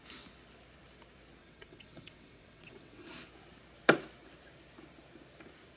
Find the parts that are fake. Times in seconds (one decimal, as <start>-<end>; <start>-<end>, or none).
1.4-3.1